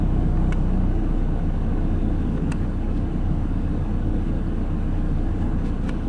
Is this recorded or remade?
remade